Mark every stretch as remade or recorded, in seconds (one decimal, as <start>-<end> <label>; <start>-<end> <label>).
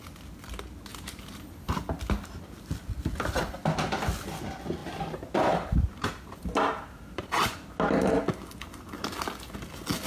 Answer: 0.0-0.9 recorded; 0.9-1.7 remade; 1.7-4.8 recorded; 4.8-6.4 remade; 6.4-10.1 recorded